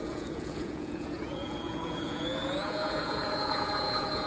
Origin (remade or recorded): remade